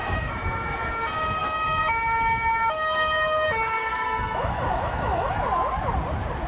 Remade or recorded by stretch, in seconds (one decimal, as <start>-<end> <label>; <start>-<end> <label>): 0.0-0.9 remade; 0.9-1.4 recorded; 1.4-5.3 remade; 5.3-6.5 recorded